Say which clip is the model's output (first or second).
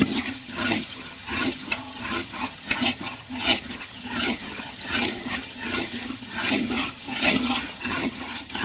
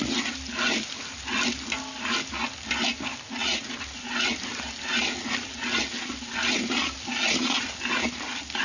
first